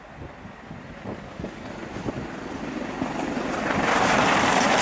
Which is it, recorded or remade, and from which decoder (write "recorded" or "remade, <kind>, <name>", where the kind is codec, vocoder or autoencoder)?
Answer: recorded